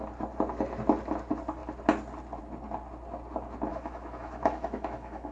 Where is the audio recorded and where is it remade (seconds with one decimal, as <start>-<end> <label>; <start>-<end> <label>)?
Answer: 0.0-3.7 recorded; 3.7-5.3 remade